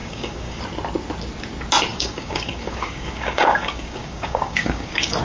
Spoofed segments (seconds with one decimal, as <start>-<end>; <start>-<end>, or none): 0.0-0.6; 1.9-5.2